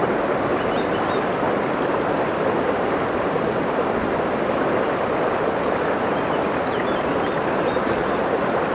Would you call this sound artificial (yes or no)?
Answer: no